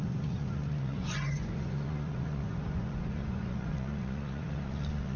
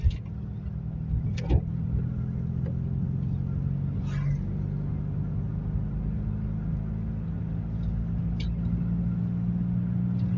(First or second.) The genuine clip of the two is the second